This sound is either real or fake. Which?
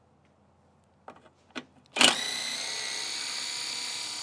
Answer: real